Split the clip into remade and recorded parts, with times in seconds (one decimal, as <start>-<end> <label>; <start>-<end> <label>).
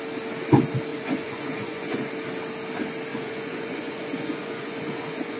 0.0-0.9 recorded; 0.9-2.1 remade; 2.1-3.1 recorded; 3.1-5.4 remade